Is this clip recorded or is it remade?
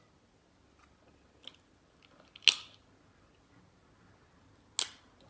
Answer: recorded